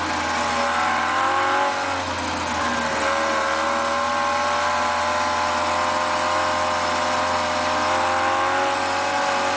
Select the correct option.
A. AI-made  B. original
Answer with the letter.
B